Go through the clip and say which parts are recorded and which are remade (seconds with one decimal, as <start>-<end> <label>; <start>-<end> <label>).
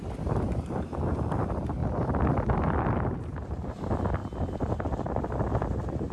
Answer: 0.0-4.2 recorded; 4.2-5.5 remade; 5.5-6.1 recorded